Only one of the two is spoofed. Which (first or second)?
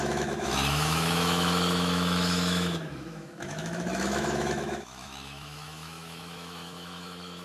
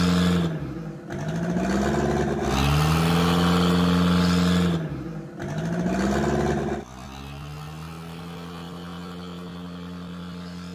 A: first